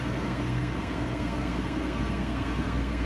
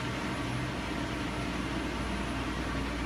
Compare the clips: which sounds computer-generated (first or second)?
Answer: first